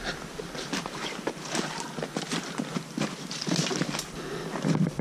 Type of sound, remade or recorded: recorded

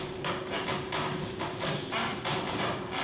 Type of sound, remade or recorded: remade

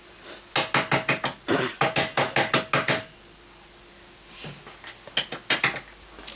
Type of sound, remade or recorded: recorded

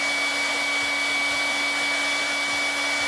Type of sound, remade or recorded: recorded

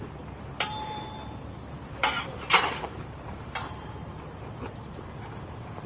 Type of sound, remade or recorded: remade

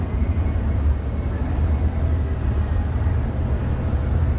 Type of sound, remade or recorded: recorded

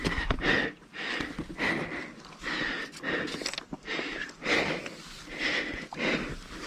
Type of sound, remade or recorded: recorded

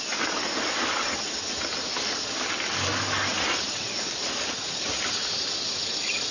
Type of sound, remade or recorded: recorded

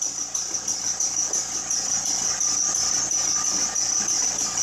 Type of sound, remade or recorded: recorded